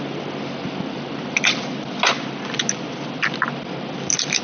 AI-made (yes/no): no